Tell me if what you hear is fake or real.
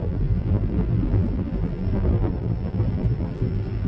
fake